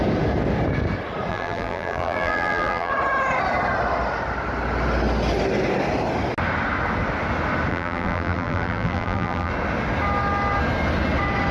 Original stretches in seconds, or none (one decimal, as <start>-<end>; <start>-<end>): 0.0-1.3; 2.9-7.7; 9.5-11.5

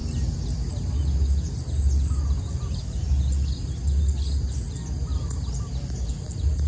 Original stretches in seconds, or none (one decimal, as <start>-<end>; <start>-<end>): 0.0-6.7